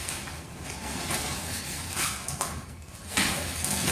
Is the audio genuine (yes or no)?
no